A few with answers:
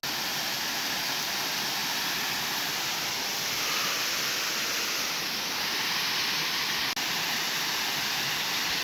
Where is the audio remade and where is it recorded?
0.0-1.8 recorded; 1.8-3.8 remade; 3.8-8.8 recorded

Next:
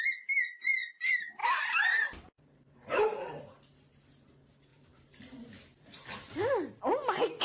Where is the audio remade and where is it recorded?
0.0-1.4 recorded; 1.4-3.4 remade; 3.4-4.7 recorded; 4.7-5.6 remade; 5.6-7.4 recorded